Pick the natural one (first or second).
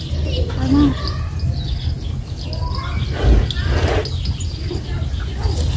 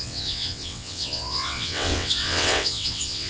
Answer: first